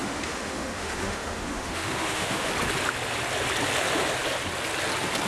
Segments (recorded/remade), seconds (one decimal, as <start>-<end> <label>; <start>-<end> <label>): 0.0-2.5 remade; 2.5-5.3 recorded